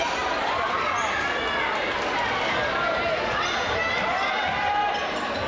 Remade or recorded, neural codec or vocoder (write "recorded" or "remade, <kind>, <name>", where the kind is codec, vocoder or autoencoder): recorded